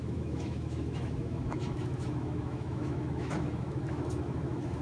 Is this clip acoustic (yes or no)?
no